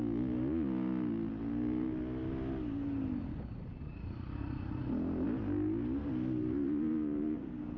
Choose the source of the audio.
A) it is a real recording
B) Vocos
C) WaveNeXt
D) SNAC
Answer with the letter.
A